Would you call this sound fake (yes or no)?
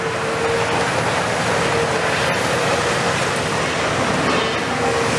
no